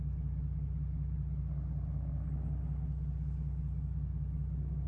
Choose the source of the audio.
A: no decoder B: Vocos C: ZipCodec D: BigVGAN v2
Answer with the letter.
A